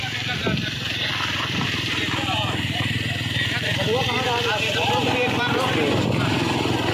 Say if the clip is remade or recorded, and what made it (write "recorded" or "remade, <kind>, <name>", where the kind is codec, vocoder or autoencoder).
recorded